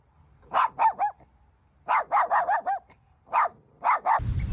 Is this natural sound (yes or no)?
yes